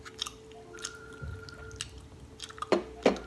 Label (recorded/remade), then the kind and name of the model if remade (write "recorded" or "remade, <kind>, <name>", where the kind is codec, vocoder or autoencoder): recorded